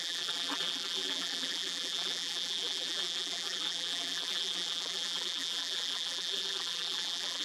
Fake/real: fake